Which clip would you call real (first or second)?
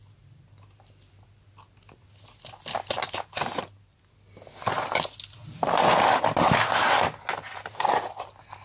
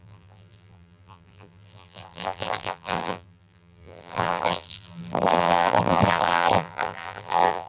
first